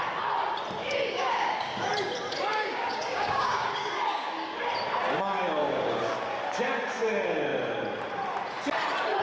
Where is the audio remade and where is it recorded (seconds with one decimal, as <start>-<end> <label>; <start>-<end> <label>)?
0.0-0.8 recorded; 0.8-1.9 remade; 1.9-2.5 recorded; 2.5-4.7 remade; 4.7-5.6 recorded; 5.6-6.1 remade; 6.1-9.2 recorded